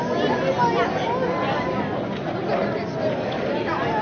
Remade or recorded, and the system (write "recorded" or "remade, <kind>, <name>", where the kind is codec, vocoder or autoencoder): recorded